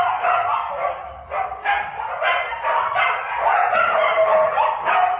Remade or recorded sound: recorded